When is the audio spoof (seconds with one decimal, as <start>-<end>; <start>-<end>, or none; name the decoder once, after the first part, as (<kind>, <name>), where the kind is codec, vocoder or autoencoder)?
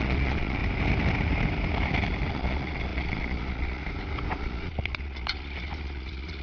0.0-0.6 (vocoder, Vocos); 2.3-3.8; 4.4-6.4